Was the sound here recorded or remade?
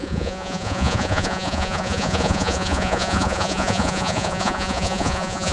remade